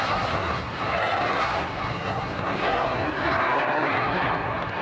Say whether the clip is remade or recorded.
remade